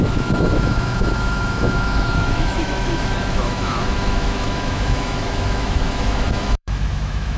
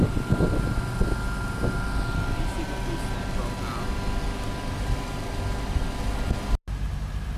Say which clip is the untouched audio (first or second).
second